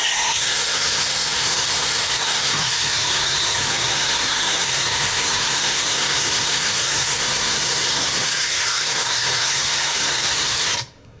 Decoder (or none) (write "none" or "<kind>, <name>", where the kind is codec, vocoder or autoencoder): codec, SNAC